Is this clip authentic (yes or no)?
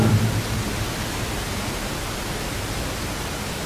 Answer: yes